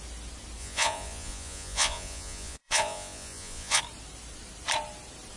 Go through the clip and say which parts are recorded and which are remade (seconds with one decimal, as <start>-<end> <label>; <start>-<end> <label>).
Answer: 0.0-0.6 recorded; 0.6-3.8 remade; 3.8-5.4 recorded